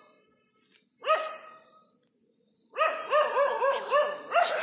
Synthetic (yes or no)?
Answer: no